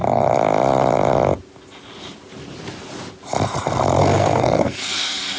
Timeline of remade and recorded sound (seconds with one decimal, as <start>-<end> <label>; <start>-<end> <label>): 0.0-4.0 recorded; 4.0-5.4 remade